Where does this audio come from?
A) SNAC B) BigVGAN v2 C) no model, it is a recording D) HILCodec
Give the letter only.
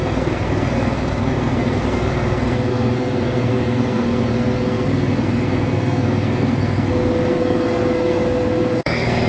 A